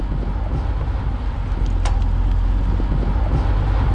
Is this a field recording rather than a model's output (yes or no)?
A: yes